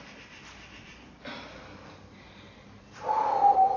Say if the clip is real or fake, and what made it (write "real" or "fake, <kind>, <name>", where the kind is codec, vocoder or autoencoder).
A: real